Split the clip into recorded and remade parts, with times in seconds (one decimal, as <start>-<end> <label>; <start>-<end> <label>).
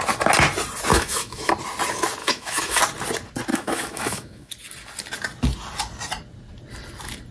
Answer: 0.0-0.9 recorded; 0.9-1.5 remade; 1.5-2.2 recorded; 2.2-2.8 remade; 2.8-3.5 recorded; 3.5-4.5 remade; 4.5-7.3 recorded